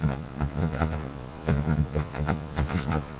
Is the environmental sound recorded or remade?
remade